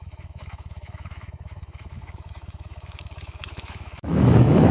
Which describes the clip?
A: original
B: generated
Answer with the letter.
B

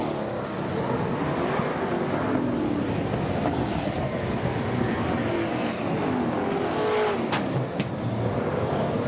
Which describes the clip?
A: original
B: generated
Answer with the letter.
A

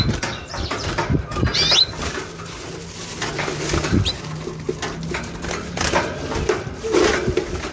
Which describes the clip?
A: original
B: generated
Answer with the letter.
A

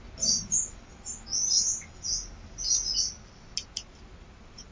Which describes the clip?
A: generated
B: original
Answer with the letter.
B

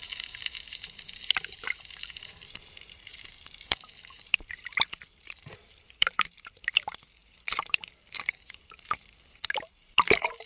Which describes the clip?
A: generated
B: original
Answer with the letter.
A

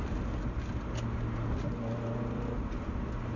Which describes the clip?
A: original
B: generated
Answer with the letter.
A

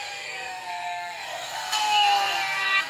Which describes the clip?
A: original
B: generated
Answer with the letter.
B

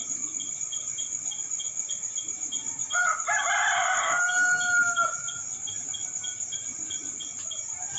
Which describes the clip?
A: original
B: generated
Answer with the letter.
A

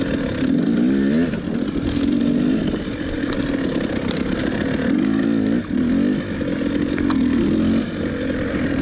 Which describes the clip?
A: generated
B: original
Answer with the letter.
B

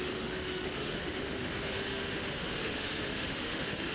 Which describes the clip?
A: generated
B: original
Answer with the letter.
A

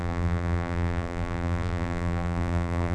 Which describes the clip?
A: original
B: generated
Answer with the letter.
B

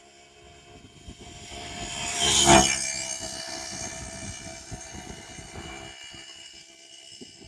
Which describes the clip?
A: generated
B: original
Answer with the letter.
B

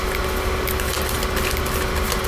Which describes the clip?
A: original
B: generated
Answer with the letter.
A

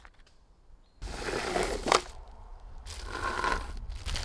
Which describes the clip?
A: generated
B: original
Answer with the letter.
B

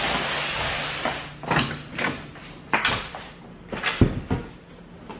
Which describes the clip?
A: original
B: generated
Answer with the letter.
A